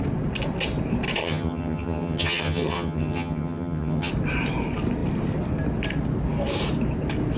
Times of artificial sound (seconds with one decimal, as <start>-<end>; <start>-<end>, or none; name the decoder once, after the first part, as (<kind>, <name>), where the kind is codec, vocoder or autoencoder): 1.2-4.1 (vocoder, HiFi-GAN)